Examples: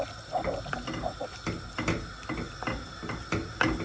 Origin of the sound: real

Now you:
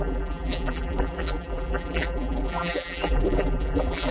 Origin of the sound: fake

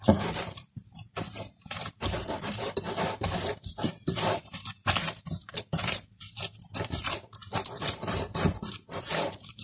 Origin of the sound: fake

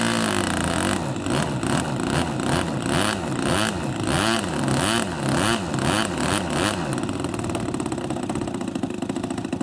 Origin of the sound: real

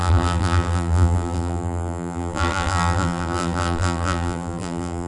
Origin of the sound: fake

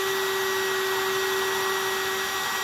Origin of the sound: real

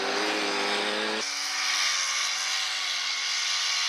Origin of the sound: real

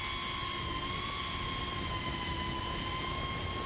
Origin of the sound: real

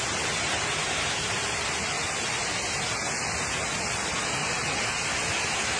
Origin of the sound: real